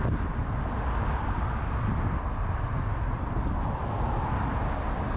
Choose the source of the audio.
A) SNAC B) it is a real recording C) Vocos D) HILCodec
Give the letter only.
B